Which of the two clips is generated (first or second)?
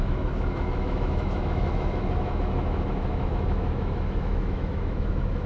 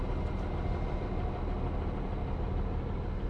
first